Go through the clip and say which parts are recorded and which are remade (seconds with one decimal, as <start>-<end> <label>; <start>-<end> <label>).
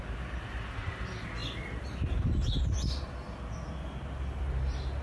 0.0-5.0 recorded